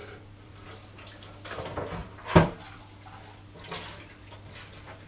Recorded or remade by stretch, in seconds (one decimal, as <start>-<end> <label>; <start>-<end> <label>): 0.0-0.7 remade; 0.7-2.0 recorded; 2.0-2.8 remade; 2.8-5.1 recorded